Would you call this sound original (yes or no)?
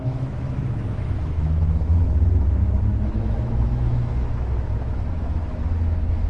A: no